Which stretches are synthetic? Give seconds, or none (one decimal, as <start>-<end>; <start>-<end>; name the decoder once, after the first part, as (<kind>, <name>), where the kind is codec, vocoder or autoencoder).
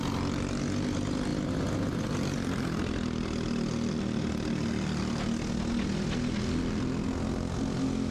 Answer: none